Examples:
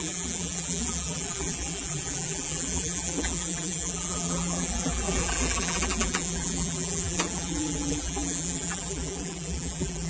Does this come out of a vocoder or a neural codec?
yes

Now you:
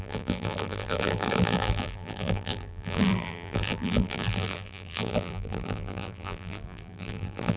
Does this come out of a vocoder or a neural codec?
yes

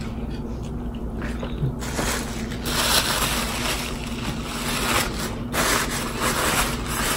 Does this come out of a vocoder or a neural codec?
no